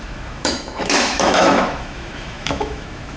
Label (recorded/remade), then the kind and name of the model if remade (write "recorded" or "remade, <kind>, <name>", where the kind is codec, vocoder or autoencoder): remade, autoencoder, DAC-VAE